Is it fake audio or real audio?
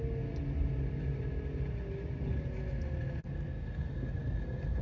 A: real